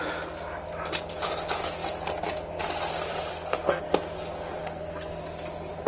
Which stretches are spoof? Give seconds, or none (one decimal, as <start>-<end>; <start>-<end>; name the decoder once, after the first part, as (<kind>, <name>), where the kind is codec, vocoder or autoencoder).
3.3-3.8 (codec, SNAC); 4.6-5.2